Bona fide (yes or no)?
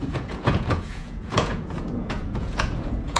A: no